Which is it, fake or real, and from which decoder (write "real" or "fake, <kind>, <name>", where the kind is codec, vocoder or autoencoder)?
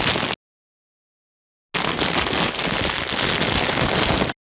real